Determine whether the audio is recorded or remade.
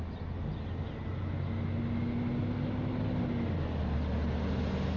recorded